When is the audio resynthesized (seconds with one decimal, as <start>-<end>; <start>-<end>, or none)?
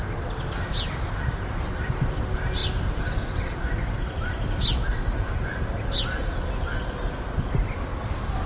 none